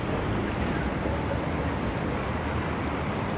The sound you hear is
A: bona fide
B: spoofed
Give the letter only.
B